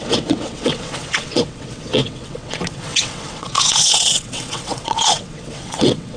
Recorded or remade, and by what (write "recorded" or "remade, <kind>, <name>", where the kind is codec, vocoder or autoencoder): remade, vocoder, WaveNeXt